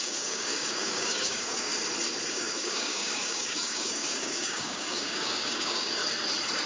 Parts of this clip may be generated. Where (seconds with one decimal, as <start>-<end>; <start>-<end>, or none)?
0.0-1.7; 2.3-6.0